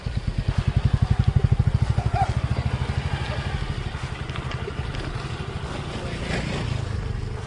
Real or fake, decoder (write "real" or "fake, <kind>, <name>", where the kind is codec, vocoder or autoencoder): real